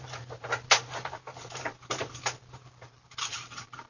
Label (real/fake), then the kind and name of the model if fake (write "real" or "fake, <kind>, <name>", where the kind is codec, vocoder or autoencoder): fake, vocoder, BigVGAN v2